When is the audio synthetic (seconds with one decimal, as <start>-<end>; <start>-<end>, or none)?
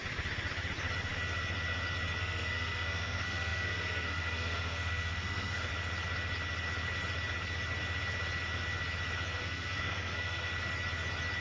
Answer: 2.2-5.7; 9.4-10.5